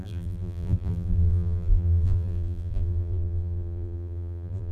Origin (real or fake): fake